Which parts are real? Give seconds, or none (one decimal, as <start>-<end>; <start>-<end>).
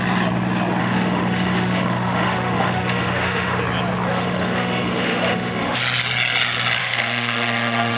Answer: 0.0-0.8; 3.6-4.1; 5.8-6.8